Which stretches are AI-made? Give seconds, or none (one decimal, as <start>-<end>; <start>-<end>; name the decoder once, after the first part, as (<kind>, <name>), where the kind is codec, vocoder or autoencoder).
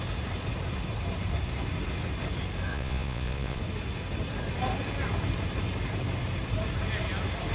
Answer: 2.7-3.6 (vocoder, Vocos)